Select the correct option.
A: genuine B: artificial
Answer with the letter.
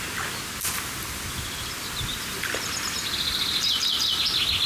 A